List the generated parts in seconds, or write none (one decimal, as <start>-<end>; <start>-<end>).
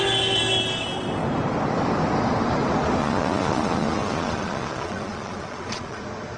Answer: 3.0-6.0